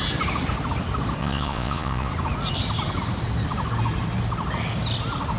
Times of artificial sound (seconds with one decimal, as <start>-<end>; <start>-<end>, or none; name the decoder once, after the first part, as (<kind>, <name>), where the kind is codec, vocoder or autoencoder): 1.2-2.1 (vocoder, Vocos)